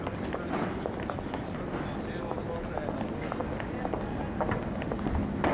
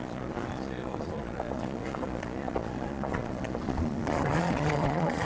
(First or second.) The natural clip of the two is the first